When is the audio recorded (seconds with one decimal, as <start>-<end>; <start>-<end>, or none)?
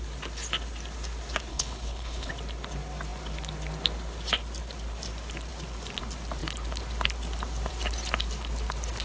0.0-1.5; 2.3-9.0